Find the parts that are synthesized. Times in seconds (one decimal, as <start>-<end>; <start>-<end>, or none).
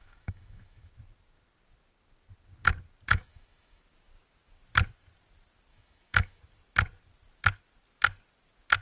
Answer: 0.0-0.9; 3.1-3.8; 5.7-6.4